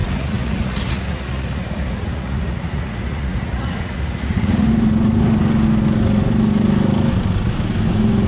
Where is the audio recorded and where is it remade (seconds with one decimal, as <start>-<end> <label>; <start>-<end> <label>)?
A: 0.0-4.7 remade; 4.7-8.3 recorded